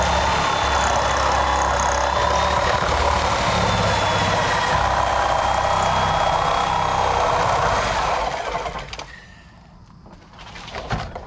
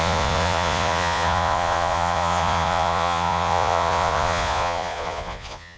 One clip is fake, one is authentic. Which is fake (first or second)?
second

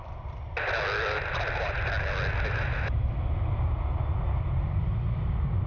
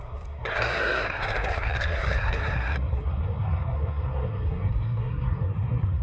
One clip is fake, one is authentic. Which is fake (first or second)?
second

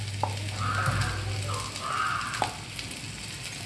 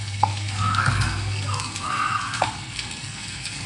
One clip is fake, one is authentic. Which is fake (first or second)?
second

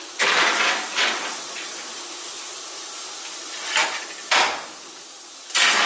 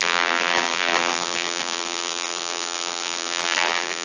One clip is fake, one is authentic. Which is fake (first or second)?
second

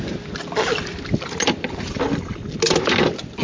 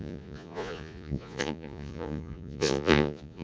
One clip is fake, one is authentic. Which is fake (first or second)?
second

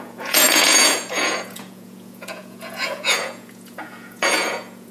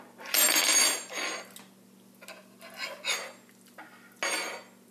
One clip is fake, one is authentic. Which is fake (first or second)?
first